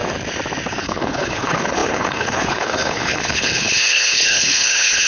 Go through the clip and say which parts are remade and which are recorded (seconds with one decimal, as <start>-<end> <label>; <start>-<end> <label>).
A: 0.0-0.8 recorded; 0.8-5.1 remade